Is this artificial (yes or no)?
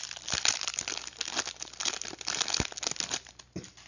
no